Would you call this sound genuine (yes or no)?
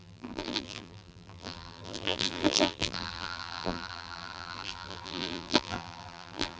no